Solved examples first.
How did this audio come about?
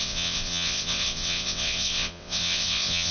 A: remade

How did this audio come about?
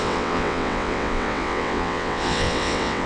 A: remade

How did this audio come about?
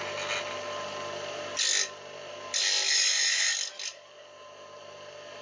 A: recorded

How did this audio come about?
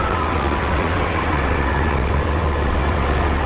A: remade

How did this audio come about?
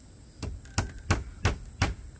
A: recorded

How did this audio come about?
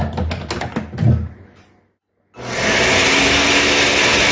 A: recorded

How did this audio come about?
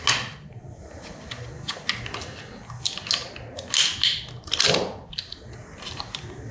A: recorded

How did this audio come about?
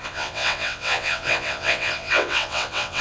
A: remade